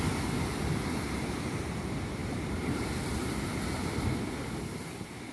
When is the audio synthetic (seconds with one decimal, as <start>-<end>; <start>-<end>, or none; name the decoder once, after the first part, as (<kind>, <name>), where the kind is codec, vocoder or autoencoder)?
none

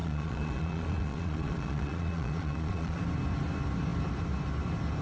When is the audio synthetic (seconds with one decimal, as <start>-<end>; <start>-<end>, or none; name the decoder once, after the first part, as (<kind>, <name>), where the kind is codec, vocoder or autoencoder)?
0.0-3.0 (vocoder, Vocos)

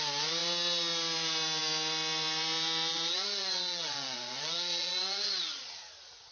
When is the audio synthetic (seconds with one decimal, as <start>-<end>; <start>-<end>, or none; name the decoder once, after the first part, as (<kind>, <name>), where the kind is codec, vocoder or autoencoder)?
2.9-6.3 (vocoder, Vocos)

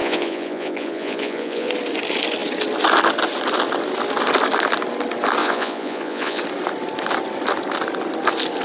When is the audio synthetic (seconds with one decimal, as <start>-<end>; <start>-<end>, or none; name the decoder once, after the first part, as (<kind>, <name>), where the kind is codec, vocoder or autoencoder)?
0.0-1.7 (vocoder, Vocos); 5.4-6.4

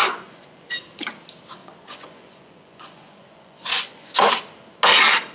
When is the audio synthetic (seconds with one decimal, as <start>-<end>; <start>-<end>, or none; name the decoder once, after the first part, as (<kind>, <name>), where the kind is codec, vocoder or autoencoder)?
0.0-0.7 (vocoder, Vocos); 1.6-4.3

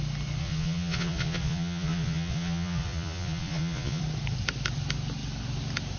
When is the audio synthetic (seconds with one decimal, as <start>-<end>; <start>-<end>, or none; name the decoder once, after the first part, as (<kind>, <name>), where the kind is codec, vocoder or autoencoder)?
0.4-4.0 (vocoder, Vocos)

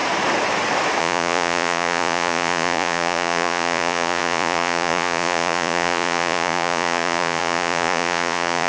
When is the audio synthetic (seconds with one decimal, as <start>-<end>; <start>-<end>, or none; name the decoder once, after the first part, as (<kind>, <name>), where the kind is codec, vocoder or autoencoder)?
1.0-8.7 (vocoder, Vocos)

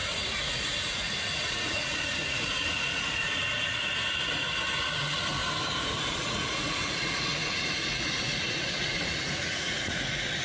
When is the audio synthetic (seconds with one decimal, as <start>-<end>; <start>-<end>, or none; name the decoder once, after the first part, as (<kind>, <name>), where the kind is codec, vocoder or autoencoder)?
0.0-5.4 (vocoder, Vocos); 6.1-10.4